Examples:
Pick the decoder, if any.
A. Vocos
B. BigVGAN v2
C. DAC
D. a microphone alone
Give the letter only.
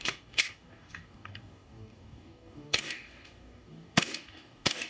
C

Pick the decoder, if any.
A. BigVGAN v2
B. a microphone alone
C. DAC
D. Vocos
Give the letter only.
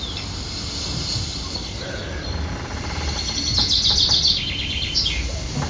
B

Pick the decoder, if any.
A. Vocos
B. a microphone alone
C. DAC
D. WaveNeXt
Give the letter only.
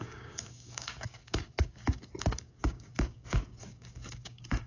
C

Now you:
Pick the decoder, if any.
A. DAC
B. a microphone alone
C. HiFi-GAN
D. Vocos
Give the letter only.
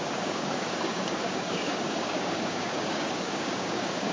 A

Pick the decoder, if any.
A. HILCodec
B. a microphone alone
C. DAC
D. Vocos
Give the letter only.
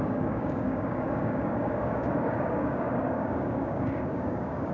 C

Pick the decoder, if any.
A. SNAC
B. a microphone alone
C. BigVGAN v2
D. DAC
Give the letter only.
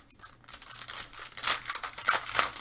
B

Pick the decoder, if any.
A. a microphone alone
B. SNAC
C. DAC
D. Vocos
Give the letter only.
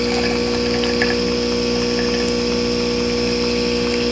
A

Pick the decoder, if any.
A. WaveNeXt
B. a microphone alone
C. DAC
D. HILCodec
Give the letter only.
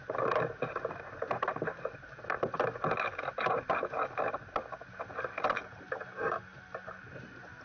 B